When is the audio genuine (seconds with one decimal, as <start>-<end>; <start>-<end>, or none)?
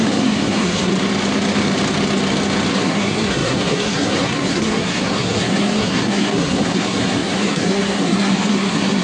0.9-2.7